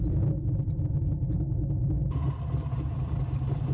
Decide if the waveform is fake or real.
real